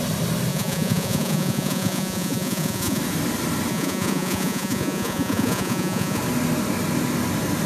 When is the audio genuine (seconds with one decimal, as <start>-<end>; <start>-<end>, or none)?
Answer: 0.0-0.5; 3.0-3.7; 6.2-7.7